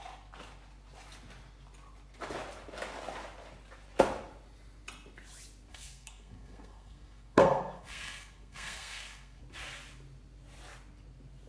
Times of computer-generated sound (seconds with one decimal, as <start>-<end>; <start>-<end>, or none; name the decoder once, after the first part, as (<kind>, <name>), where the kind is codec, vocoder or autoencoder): 5.7-9.4 (codec, SNAC)